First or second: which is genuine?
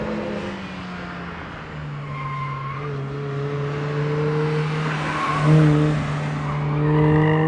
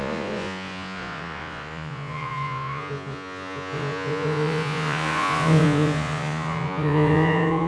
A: first